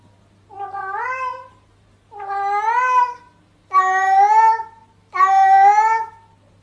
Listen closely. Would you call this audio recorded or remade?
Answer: recorded